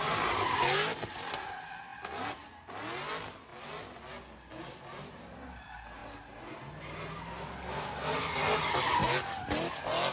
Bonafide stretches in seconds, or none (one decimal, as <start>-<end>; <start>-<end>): 0.0-10.1